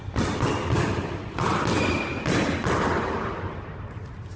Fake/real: real